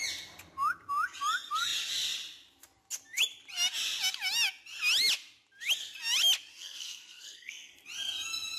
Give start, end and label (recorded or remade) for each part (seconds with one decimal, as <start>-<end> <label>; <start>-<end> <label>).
0.0-6.5 recorded; 6.5-7.8 remade; 7.8-8.6 recorded